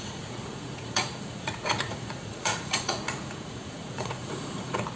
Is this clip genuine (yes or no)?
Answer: no